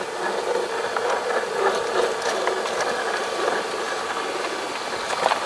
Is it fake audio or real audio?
real